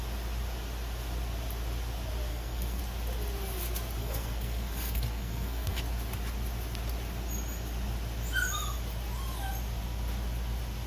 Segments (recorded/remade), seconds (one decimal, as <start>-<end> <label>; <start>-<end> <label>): 0.0-2.3 recorded; 2.3-2.8 remade; 2.8-4.0 recorded; 4.0-5.8 remade; 5.8-10.9 recorded